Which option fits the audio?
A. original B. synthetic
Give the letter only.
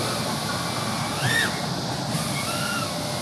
A